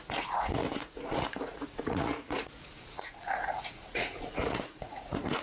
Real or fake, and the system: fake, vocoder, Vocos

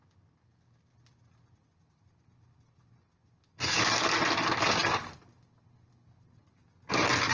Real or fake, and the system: real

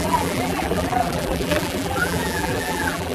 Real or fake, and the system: fake, vocoder, BigVGAN v2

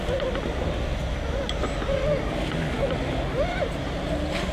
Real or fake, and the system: real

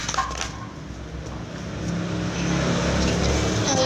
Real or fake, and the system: real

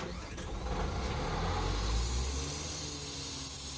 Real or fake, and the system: real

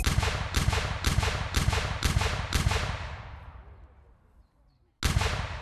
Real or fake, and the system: real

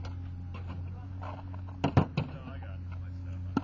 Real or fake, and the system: real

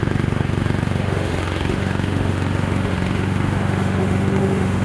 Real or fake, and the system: fake, autoencoder, DAC-VAE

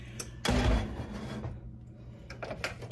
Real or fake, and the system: real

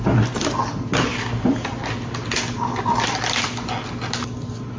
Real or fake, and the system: real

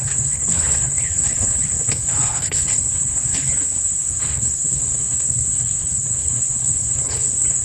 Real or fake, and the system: fake, codec, HILCodec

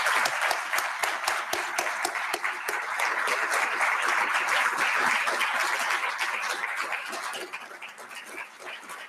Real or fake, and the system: real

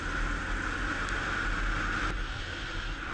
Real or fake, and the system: real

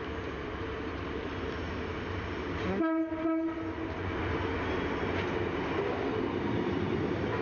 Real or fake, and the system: real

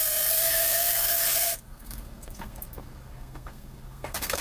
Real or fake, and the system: fake, codec, SNAC